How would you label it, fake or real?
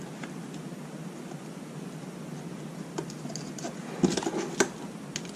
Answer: real